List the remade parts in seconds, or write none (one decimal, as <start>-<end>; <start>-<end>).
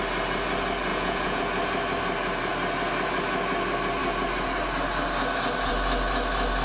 0.9-1.4